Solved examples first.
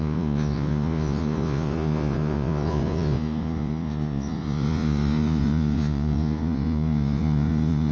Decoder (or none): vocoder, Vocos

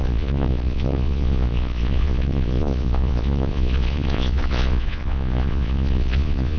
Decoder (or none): vocoder, Vocos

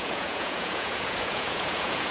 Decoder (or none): vocoder, Vocos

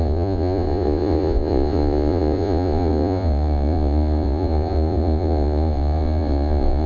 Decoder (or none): vocoder, Vocos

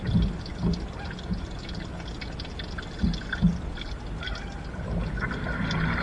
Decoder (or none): none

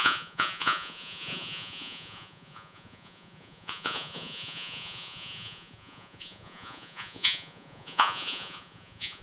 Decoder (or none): vocoder, Vocos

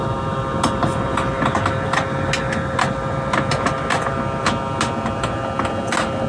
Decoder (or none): none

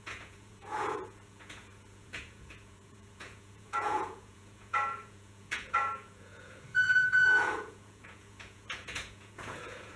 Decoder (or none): vocoder, Vocos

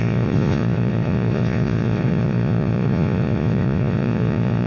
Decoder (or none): vocoder, Vocos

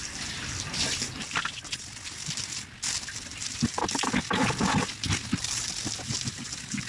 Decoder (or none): none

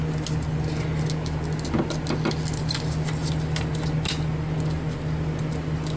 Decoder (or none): none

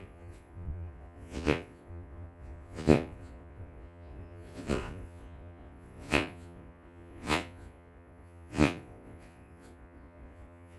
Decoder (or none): vocoder, Vocos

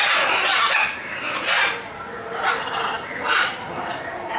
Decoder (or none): none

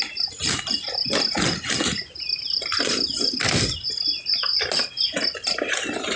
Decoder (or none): none